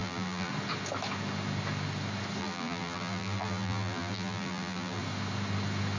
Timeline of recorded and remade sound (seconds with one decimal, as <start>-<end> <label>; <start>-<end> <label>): 0.0-0.5 remade; 0.5-2.4 recorded; 2.4-5.0 remade; 5.0-6.0 recorded